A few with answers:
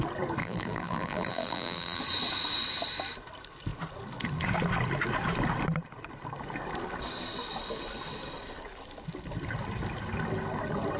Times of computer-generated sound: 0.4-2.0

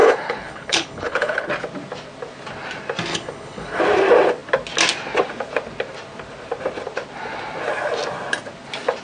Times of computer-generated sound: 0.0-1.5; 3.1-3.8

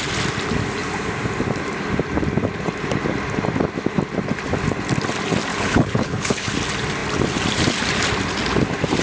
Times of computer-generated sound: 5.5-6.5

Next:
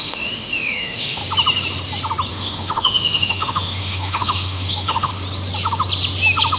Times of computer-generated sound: 0.0-1.2; 2.3-5.1

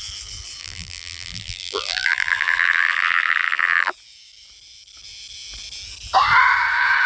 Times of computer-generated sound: 0.6-3.9

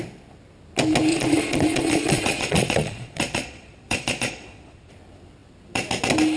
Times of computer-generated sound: 1.1-4.9

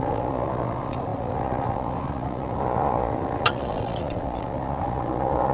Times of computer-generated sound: 0.0-5.5